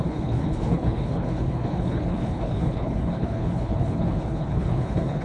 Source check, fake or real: fake